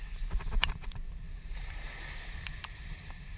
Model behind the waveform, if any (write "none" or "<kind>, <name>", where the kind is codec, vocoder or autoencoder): vocoder, BigVGAN v2